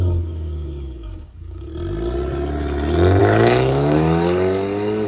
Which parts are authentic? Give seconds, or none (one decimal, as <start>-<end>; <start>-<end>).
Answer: 1.7-3.2